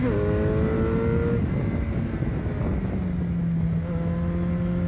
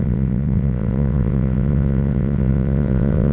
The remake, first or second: second